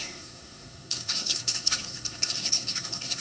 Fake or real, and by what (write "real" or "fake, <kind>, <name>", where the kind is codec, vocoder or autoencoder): fake, codec, SNAC